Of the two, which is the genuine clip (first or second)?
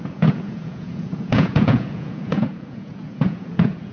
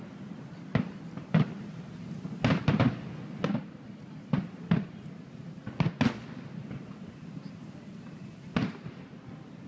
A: second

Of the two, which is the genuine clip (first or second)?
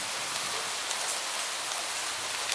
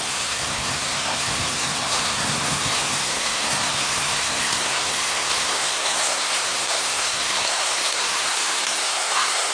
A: first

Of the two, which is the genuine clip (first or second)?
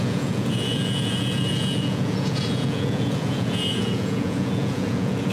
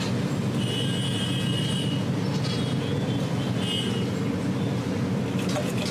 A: second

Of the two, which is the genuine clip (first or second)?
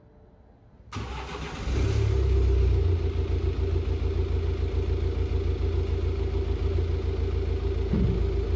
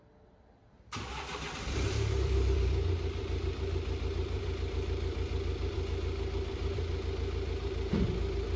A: first